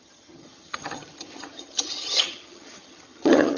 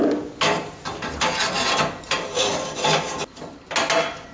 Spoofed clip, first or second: first